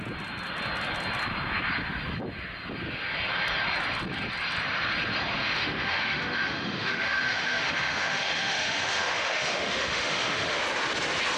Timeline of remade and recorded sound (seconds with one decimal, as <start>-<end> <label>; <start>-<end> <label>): 0.0-5.4 recorded; 5.4-10.6 remade; 10.6-11.4 recorded